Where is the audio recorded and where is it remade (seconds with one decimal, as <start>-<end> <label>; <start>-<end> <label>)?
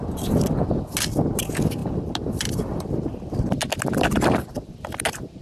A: 0.0-5.4 recorded